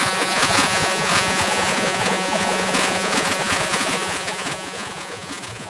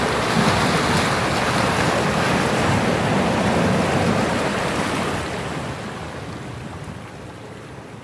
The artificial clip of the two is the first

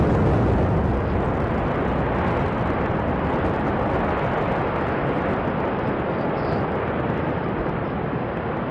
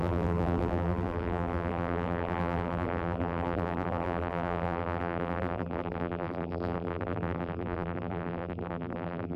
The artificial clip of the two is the second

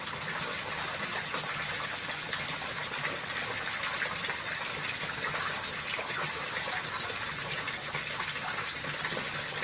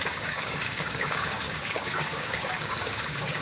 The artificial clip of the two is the second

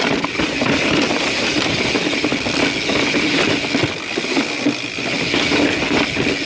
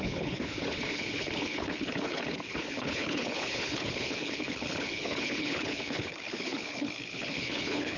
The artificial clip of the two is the second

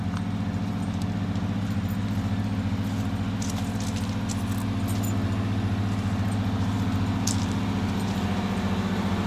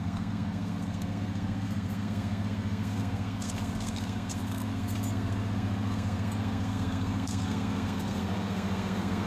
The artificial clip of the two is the second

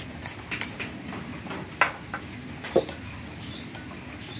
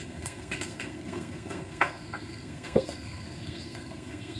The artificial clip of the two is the second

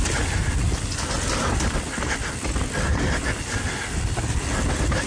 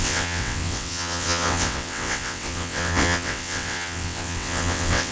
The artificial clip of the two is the second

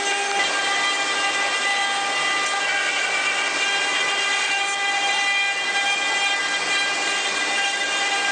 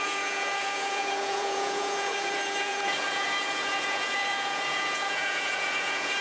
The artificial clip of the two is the second